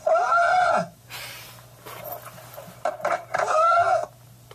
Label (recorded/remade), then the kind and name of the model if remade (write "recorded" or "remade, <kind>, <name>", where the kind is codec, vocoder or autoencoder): recorded